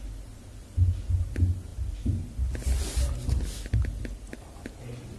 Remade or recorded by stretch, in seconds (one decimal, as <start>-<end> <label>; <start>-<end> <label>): 0.0-5.2 recorded